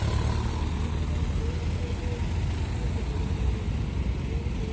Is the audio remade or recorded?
recorded